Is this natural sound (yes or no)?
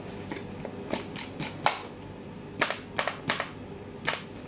yes